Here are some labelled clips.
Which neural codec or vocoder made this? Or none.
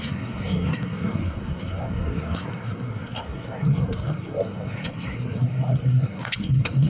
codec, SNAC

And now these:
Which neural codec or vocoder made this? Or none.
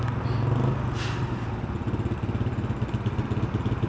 none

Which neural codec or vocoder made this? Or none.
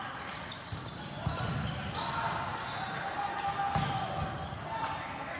none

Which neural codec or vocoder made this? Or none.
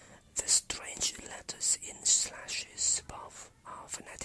none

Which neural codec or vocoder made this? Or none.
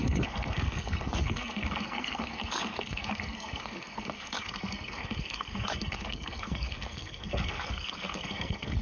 codec, SNAC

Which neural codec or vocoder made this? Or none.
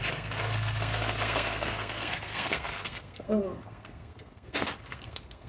codec, SNAC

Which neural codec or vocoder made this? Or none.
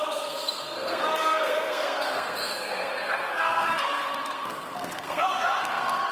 codec, SNAC